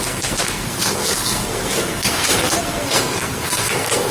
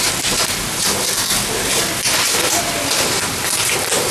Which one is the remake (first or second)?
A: first